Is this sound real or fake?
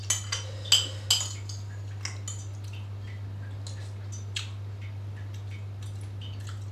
real